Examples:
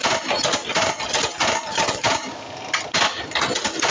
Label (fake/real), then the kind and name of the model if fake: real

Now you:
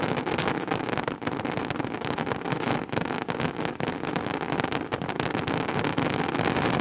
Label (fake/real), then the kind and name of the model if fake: real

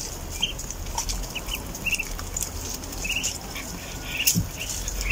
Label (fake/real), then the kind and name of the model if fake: real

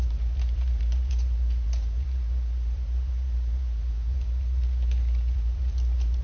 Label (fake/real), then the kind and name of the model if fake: fake, vocoder, BigVGAN v2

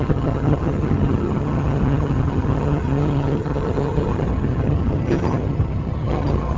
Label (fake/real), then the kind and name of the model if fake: fake, vocoder, HiFi-GAN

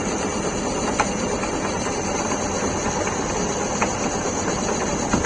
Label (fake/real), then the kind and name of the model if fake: real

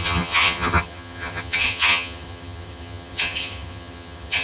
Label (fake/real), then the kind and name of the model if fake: fake, vocoder, HiFi-GAN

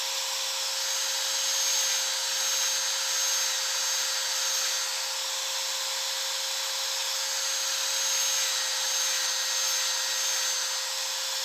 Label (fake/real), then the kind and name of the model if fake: real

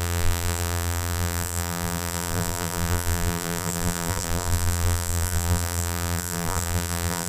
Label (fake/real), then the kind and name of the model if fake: fake, vocoder, BigVGAN v2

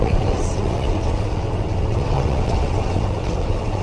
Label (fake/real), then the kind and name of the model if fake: fake, vocoder, WaveNeXt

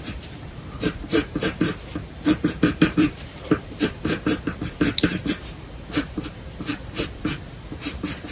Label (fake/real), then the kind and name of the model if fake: fake, vocoder, BigVGAN v2